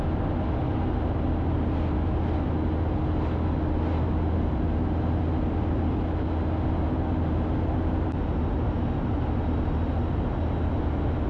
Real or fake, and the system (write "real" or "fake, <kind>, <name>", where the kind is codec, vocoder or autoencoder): real